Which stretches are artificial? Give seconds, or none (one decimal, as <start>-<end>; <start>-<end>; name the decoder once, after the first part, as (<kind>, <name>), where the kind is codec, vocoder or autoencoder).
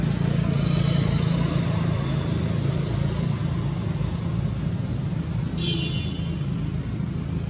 none